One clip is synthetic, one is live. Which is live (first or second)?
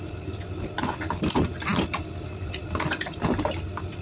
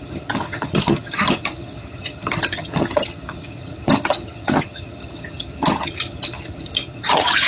first